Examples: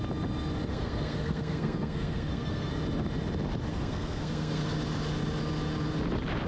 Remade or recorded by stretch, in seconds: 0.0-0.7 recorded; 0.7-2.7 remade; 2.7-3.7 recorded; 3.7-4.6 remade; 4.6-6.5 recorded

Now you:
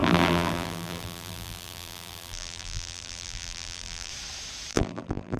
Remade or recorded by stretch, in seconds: 0.0-4.1 remade; 4.1-4.7 recorded; 4.7-5.4 remade

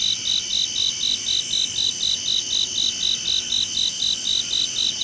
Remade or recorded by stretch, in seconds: 0.0-5.0 recorded

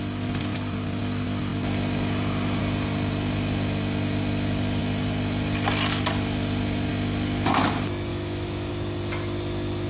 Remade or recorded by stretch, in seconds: 0.0-8.1 recorded; 8.1-8.7 remade; 8.7-9.9 recorded

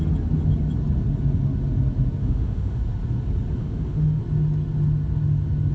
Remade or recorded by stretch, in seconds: 0.0-2.2 recorded; 2.2-2.8 remade; 2.8-3.6 recorded; 3.6-4.2 remade; 4.2-5.7 recorded

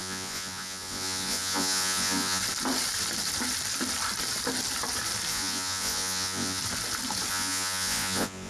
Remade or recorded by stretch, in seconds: 0.0-2.4 remade; 2.4-5.3 recorded; 5.3-6.6 remade; 6.6-7.3 recorded; 7.3-8.5 remade